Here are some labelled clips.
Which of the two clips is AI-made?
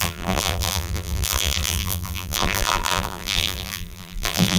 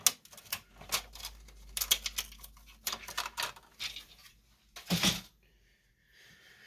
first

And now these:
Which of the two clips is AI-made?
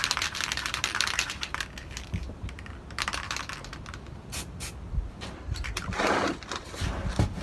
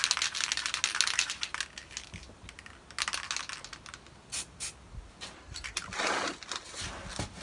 first